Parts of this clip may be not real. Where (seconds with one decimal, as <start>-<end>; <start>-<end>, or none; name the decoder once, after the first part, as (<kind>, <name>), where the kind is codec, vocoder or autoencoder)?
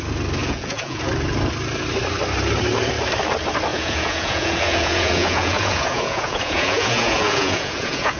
0.4-1.1 (vocoder, Vocos); 3.7-8.2